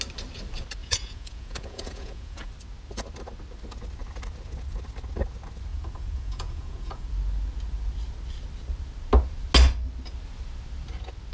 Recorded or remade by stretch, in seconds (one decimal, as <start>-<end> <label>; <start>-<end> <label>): 0.0-0.8 recorded; 0.8-2.5 remade; 2.5-5.7 recorded; 5.7-7.1 remade; 7.1-11.3 recorded

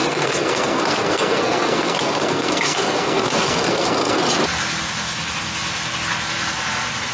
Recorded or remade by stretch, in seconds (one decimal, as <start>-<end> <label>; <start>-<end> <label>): 0.0-4.2 remade; 4.2-7.1 recorded

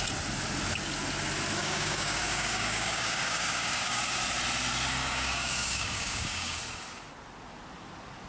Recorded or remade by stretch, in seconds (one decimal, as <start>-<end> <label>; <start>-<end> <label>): 0.0-1.6 recorded; 1.6-4.2 remade; 4.2-5.0 recorded; 5.0-6.6 remade; 6.6-8.3 recorded

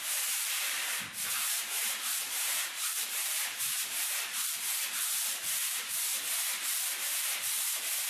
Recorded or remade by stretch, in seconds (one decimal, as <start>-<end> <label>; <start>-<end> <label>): 0.0-8.1 remade

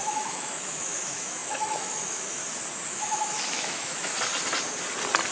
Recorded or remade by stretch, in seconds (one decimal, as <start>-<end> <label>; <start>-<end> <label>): 0.0-2.4 remade; 2.4-2.9 recorded; 2.9-4.1 remade; 4.1-5.3 recorded

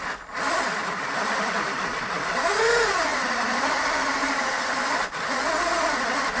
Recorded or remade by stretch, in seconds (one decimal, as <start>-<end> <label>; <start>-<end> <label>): 0.0-3.1 recorded; 3.1-5.2 remade; 5.2-6.4 recorded

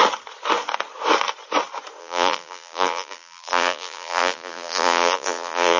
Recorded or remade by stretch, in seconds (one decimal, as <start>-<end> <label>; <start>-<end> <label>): 0.0-2.0 recorded; 2.0-5.8 remade